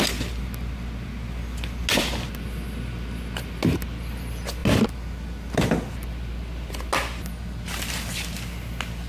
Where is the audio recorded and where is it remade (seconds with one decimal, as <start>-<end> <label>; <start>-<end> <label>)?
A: 0.0-9.1 recorded